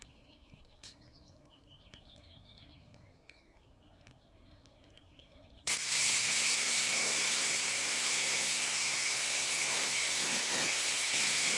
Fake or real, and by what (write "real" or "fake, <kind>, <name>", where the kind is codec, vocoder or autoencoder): fake, codec, SNAC